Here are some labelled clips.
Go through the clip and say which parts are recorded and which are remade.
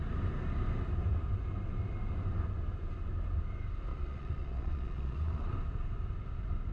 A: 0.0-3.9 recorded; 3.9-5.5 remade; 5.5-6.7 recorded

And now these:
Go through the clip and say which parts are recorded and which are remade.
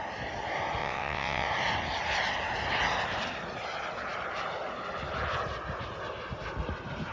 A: 0.0-0.8 recorded; 0.8-1.5 remade; 1.5-7.1 recorded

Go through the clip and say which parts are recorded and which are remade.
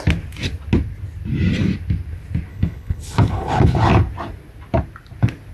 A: 0.0-2.5 recorded; 2.5-3.9 remade; 3.9-5.5 recorded